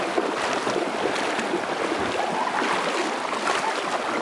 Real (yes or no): yes